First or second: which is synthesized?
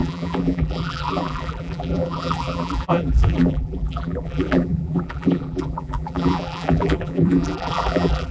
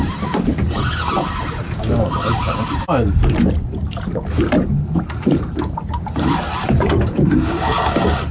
first